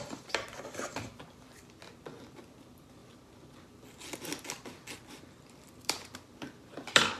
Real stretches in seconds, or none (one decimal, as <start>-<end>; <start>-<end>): 1.8-2.5; 3.0-4.7